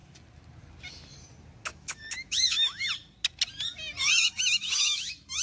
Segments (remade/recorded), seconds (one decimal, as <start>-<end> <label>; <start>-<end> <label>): 0.0-1.7 recorded; 1.7-2.9 remade; 2.9-4.0 recorded; 4.0-5.4 remade